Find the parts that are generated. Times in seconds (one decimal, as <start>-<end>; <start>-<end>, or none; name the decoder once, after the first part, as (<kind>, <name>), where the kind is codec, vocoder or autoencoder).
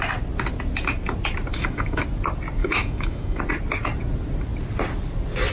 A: 1.5-2.0 (autoencoder, DAC-VAE); 2.6-3.4